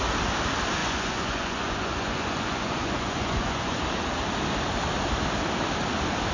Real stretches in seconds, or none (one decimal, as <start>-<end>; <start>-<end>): 0.0-0.8; 3.8-6.3